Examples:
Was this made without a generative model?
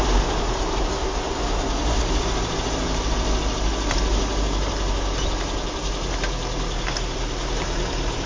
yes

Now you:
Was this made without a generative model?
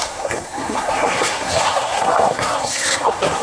no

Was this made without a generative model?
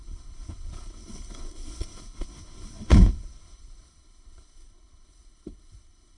no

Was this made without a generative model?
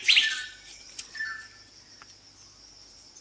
yes